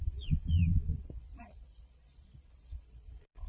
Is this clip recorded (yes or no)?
no